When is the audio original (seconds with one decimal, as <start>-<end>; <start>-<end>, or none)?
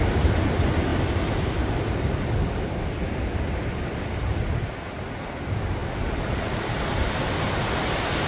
0.0-0.9; 1.5-8.3